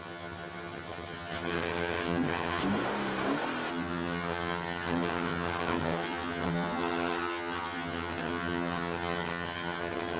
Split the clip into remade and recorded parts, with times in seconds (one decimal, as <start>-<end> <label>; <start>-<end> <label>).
0.0-2.6 remade; 2.6-3.7 recorded; 3.7-10.2 remade